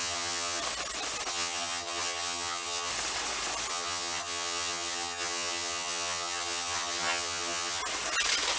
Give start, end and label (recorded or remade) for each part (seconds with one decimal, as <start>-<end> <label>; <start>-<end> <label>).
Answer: 0.0-0.6 remade; 0.6-1.3 recorded; 1.3-2.9 remade; 2.9-3.7 recorded; 3.7-7.8 remade; 7.8-8.6 recorded